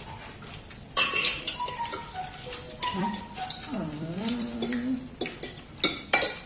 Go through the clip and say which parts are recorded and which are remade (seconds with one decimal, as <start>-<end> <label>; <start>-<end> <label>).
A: 0.0-2.0 remade; 2.0-2.8 recorded; 2.8-4.5 remade; 4.5-6.0 recorded; 6.0-6.5 remade